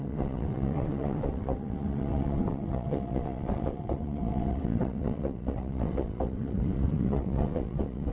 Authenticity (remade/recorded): remade